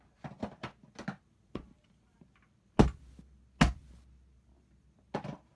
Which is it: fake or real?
real